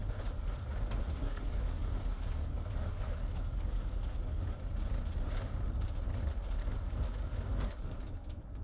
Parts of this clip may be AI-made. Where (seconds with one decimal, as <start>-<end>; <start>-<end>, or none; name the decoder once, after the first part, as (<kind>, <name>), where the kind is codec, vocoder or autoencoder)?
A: 1.2-4.4 (codec, DAC); 6.6-8.6